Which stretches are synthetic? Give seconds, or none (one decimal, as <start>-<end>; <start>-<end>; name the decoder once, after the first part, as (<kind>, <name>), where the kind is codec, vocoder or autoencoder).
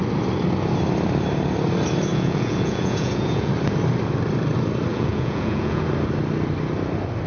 2.1-3.5 (vocoder, Vocos); 4.9-5.8